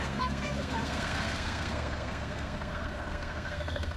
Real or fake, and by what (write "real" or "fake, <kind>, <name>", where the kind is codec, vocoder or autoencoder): fake, codec, SNAC